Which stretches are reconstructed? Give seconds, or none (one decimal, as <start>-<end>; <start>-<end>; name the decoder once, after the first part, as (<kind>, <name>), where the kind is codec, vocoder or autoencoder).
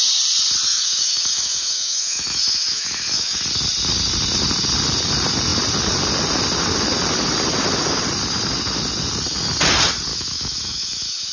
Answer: 0.7-3.4 (autoencoder, DAC-VAE); 10.1-11.3